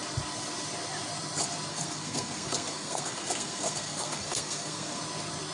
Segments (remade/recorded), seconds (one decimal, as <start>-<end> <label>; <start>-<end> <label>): 0.0-1.7 recorded; 1.7-5.0 remade; 5.0-5.5 recorded